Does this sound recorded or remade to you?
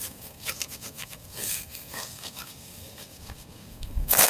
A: remade